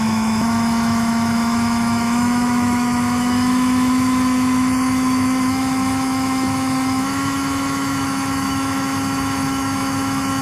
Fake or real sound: fake